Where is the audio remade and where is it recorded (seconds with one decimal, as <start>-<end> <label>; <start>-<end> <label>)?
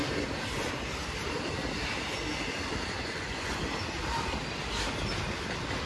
0.0-3.0 recorded; 3.0-3.6 remade; 3.6-5.9 recorded